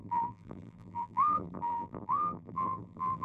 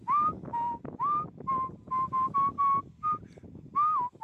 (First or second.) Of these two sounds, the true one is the second